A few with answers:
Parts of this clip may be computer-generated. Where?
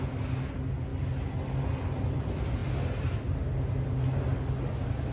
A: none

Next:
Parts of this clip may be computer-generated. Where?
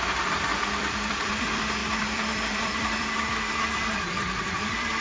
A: 0.5-1.3 (vocoder, BigVGAN v2); 1.8-5.0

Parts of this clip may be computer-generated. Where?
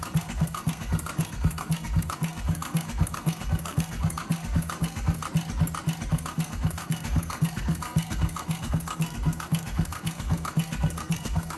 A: 0.0-5.2 (codec, SNAC); 6.1-11.6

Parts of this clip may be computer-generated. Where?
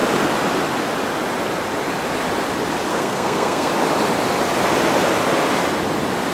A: 2.9-3.7 (codec, SNAC)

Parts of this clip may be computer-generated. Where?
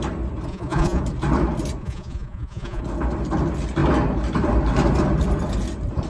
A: 0.5-1.0 (vocoder, Vocos); 1.8-2.8